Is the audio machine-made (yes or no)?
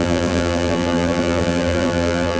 yes